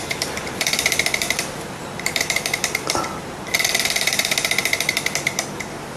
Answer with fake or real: fake